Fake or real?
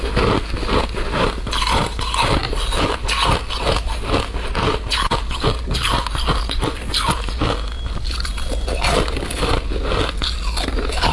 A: real